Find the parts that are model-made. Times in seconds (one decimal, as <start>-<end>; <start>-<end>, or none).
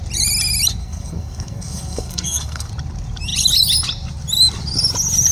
0.8-2.7